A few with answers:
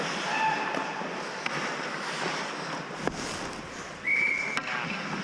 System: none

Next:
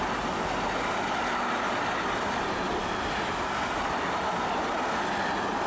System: none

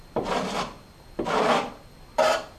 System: vocoder, BigVGAN v2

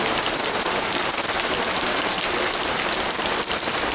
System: none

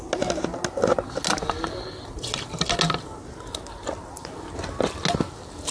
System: none